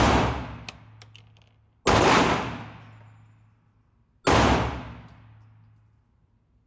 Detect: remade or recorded recorded